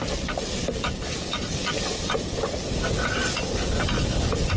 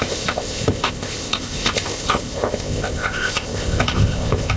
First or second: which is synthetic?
second